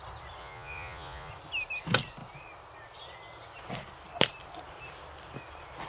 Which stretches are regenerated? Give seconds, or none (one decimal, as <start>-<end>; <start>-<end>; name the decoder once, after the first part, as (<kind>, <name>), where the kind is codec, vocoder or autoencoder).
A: 0.4-1.3 (vocoder, Vocos)